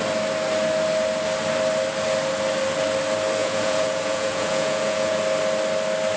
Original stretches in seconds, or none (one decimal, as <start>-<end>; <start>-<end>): 0.0-3.4; 5.2-6.2